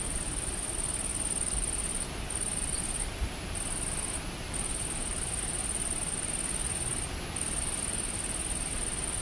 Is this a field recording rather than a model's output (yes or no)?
yes